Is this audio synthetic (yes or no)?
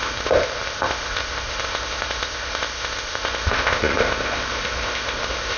yes